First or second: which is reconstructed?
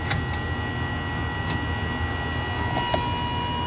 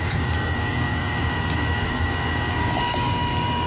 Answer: second